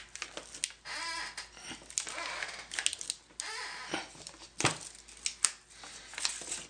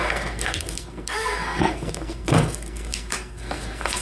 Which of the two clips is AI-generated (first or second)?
second